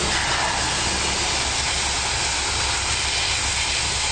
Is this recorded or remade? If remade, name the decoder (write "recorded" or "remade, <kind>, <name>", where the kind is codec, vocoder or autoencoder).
recorded